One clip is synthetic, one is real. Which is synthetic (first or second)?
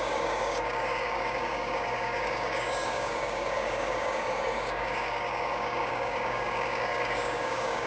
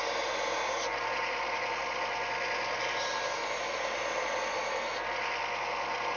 first